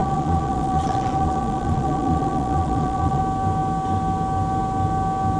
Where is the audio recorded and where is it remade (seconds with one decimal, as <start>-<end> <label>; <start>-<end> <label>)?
0.0-3.2 remade; 3.2-5.4 recorded